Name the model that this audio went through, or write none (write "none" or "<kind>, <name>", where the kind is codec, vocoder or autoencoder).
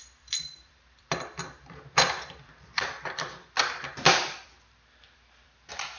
vocoder, BigVGAN v2